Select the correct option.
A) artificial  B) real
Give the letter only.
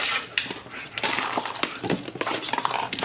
A